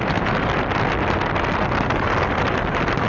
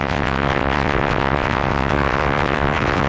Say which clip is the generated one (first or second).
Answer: second